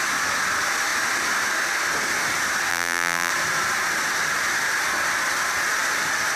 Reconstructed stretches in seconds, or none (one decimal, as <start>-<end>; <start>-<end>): 2.7-3.3